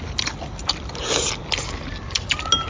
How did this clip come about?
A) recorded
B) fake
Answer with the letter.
A